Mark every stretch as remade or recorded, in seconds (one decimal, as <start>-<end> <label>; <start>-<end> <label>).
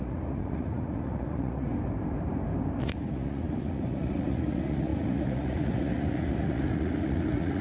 0.0-1.7 remade; 1.7-2.8 recorded; 2.8-7.6 remade